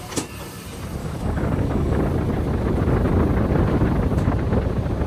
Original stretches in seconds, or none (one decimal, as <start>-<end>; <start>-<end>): 0.0-1.0; 2.0-5.1